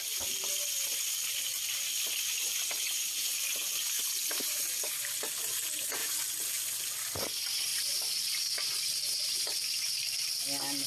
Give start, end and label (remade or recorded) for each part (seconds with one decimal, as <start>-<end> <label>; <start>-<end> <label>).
0.0-4.2 recorded; 4.2-4.9 remade; 4.9-6.0 recorded; 6.0-6.5 remade; 6.5-7.7 recorded; 7.7-9.4 remade; 9.4-10.9 recorded